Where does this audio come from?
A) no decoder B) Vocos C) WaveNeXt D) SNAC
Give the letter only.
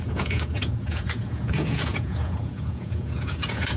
B